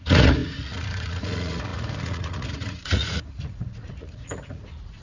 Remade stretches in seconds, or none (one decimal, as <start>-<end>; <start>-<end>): 0.0-5.0